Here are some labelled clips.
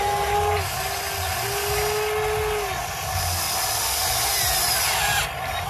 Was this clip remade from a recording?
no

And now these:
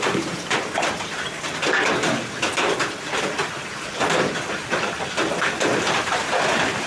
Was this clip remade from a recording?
no